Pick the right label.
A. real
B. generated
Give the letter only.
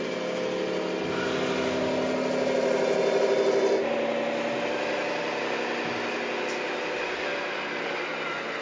A